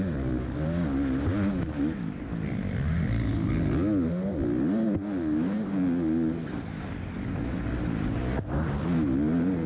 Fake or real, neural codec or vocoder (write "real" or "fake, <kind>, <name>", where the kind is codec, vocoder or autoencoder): real